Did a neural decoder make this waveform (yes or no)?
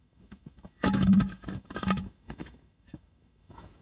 yes